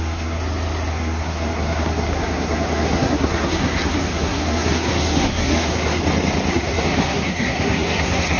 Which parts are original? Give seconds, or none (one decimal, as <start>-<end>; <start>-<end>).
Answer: 0.4-0.9; 6.0-6.5